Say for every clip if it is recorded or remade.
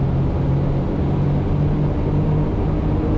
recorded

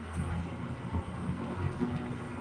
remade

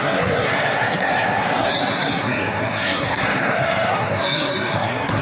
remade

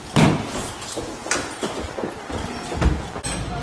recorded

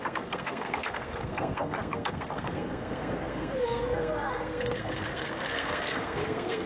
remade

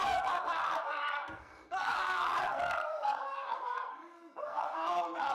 remade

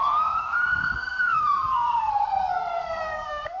remade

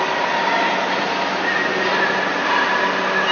recorded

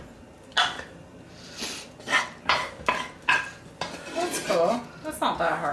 recorded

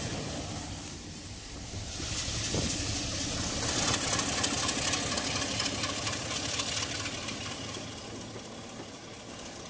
recorded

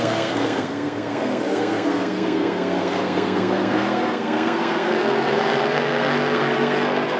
remade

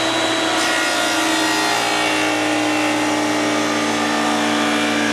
recorded